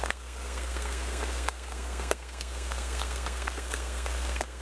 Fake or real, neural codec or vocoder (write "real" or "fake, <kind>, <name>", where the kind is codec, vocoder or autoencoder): fake, codec, SNAC